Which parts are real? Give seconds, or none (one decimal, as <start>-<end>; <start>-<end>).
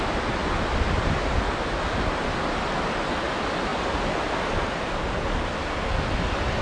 0.0-6.6